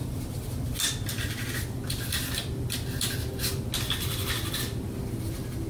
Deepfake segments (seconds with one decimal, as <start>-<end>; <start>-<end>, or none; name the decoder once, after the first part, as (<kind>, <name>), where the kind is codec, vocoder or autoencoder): 0.0-0.6 (vocoder, BigVGAN v2)

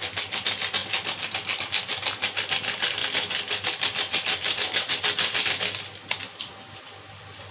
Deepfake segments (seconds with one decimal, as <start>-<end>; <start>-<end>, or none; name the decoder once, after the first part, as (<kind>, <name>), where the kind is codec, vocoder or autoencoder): 0.8-1.6 (vocoder, BigVGAN v2); 3.0-6.5

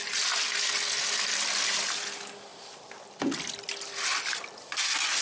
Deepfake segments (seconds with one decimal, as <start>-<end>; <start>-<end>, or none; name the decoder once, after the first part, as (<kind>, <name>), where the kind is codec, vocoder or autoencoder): none

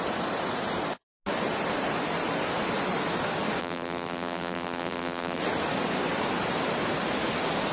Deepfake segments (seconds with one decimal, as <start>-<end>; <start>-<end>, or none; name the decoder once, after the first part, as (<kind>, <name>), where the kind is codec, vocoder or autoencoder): 3.6-5.4 (vocoder, BigVGAN v2)